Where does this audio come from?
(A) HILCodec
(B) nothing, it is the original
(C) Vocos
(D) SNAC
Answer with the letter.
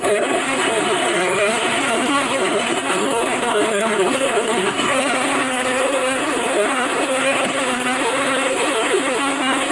D